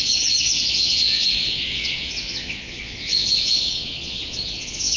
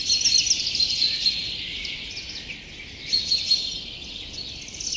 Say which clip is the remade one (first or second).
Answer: first